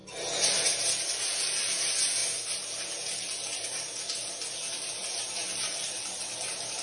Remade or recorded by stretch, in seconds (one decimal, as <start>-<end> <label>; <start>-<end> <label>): 0.0-6.8 recorded